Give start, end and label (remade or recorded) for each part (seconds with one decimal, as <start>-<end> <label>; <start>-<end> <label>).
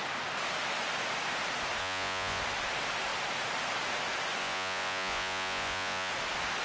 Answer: 0.0-1.8 recorded; 1.8-2.4 remade; 2.4-4.4 recorded; 4.4-6.1 remade; 6.1-6.6 recorded